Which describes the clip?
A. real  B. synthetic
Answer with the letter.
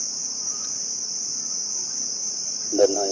A